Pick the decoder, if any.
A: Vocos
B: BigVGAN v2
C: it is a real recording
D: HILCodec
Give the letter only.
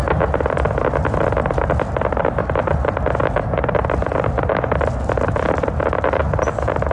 C